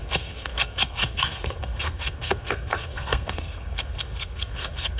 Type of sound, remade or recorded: remade